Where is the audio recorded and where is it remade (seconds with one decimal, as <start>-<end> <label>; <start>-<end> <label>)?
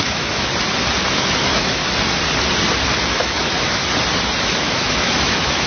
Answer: 0.0-0.5 remade; 0.5-1.1 recorded; 1.1-1.8 remade; 1.8-3.1 recorded; 3.1-3.8 remade; 3.8-4.4 recorded; 4.4-5.7 remade